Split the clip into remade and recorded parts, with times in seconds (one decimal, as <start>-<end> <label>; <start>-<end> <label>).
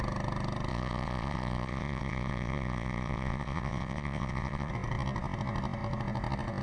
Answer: 0.0-0.7 recorded; 0.7-4.7 remade; 4.7-6.6 recorded